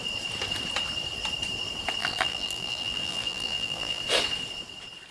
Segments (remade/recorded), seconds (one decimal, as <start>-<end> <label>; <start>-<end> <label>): 0.0-2.0 recorded; 2.0-4.0 remade; 4.0-5.1 recorded